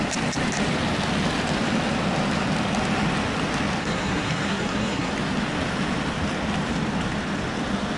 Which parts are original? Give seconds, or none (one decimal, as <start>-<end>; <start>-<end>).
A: 0.0-3.8; 5.1-8.0